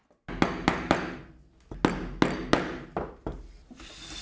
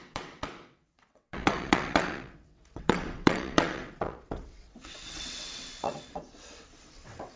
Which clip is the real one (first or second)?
first